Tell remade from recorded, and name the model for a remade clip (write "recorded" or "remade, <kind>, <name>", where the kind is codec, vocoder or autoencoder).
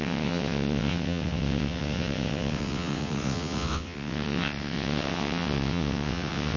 remade, vocoder, WaveNeXt